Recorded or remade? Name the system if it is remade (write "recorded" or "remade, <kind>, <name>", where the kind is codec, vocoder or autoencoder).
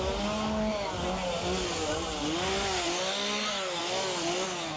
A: recorded